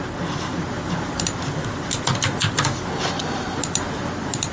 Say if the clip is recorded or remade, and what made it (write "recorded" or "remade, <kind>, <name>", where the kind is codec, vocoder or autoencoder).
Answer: recorded